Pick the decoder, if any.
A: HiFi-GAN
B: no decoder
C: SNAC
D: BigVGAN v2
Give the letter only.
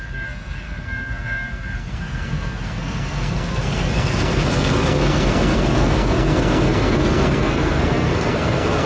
C